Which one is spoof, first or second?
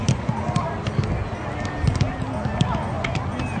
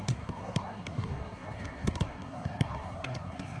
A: second